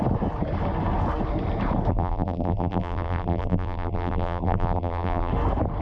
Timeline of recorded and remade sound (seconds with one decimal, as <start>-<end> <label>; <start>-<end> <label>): 0.0-1.9 recorded; 1.9-5.3 remade; 5.3-5.8 recorded